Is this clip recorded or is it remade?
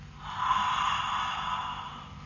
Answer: recorded